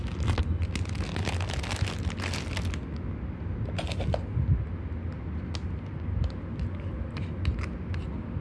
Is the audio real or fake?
real